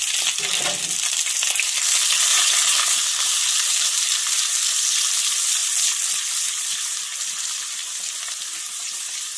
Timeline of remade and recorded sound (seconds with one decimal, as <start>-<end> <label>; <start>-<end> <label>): 0.0-2.3 recorded; 2.3-4.5 remade; 4.5-9.4 recorded